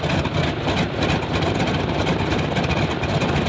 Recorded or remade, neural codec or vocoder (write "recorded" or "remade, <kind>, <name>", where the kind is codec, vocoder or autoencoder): recorded